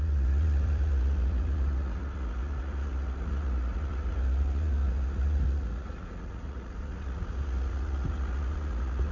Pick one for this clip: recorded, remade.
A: remade